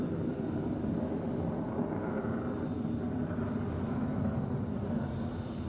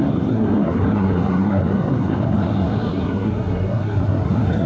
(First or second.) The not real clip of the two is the second